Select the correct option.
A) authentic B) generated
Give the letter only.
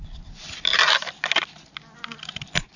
A